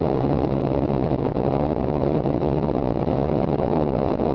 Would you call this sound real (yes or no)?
no